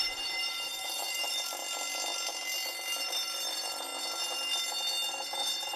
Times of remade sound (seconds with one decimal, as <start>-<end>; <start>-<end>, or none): 0.0-1.6; 3.0-3.9; 5.1-5.8